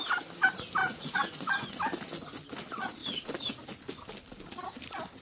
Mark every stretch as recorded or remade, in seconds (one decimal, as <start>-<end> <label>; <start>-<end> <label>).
0.0-0.8 recorded; 0.8-1.7 remade; 1.7-5.2 recorded

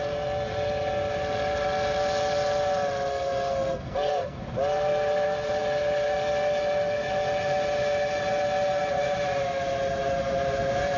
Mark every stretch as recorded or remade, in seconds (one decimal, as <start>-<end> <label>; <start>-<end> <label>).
0.0-3.1 recorded; 3.1-4.4 remade; 4.4-11.0 recorded